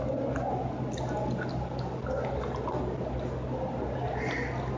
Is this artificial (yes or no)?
no